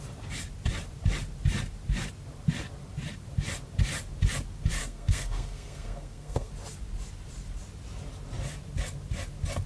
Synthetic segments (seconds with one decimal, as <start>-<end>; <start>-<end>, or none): 4.8-6.5